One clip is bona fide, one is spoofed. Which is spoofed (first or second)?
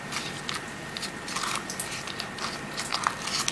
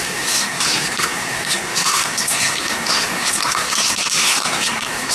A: second